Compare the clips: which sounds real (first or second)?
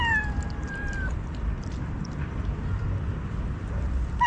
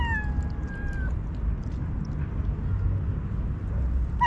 second